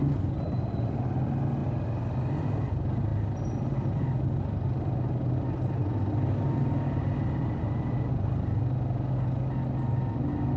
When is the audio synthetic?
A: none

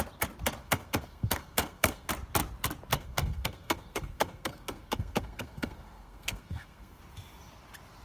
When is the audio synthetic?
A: 0.6-2.1 (codec, SNAC); 2.9-7.0

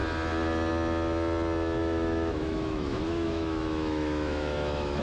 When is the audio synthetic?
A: 1.8-5.0 (autoencoder, DAC-VAE)

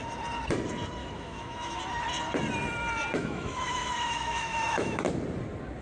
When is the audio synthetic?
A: 1.0-1.8 (autoencoder, DAC-VAE); 3.2-5.0

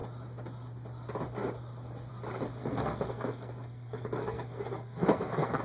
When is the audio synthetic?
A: 2.6-5.6 (codec, SNAC)